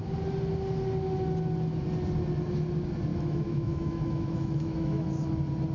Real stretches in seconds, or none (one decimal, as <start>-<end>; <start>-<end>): 0.0-3.1; 5.1-5.7